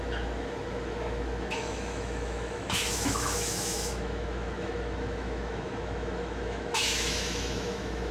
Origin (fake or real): fake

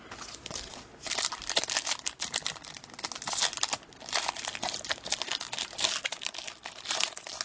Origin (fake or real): real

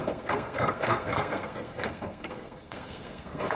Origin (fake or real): fake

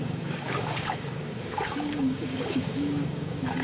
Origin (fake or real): fake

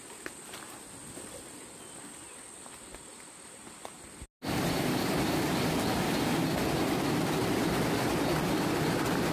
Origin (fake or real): real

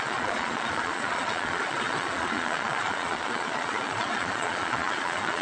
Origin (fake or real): fake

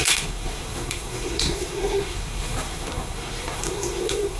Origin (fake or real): fake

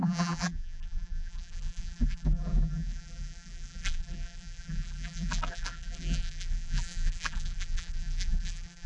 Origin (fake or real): fake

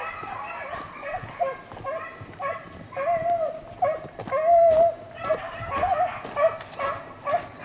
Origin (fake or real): real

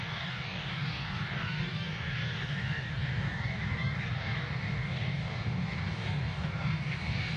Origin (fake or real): fake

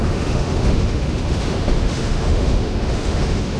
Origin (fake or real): fake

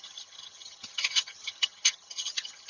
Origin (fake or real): fake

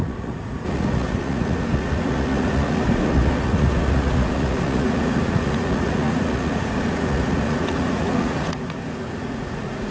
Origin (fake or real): fake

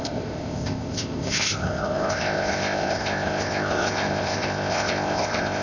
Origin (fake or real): fake